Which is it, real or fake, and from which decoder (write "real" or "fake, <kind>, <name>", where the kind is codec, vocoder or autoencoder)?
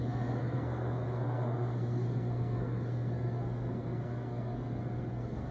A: fake, codec, SNAC